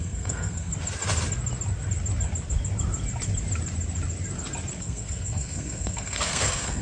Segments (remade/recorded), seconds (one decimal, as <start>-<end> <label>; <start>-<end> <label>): 0.0-0.7 remade; 0.7-4.8 recorded; 4.8-6.8 remade